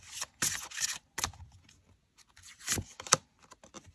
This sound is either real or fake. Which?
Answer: real